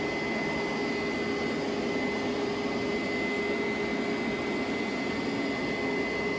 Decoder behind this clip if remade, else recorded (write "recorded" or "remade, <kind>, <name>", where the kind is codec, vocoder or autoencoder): recorded